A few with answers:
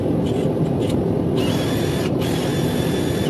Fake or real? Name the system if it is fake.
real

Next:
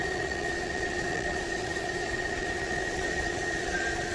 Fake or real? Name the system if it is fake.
fake, vocoder, Vocos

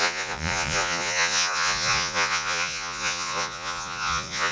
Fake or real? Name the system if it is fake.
fake, vocoder, Vocos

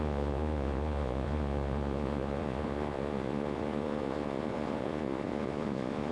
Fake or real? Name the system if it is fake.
fake, vocoder, Vocos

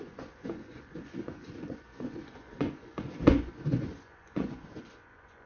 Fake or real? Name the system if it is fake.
fake, vocoder, Vocos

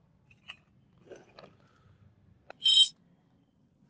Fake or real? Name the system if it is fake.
real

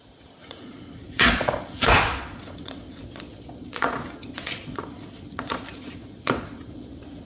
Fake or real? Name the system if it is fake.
fake, vocoder, Vocos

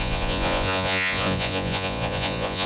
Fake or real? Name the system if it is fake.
fake, vocoder, Vocos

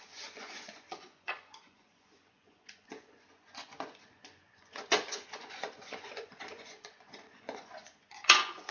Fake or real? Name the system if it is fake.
fake, vocoder, Vocos